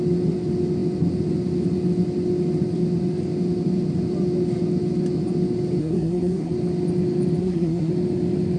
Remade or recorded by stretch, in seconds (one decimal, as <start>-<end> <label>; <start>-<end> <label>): 0.0-5.8 recorded; 5.8-6.5 remade; 6.5-7.4 recorded; 7.4-7.9 remade; 7.9-8.6 recorded